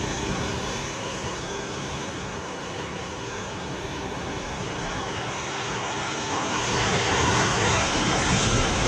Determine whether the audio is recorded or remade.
remade